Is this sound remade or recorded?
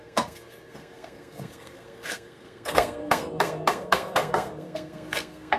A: remade